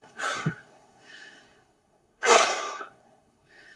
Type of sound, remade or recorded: remade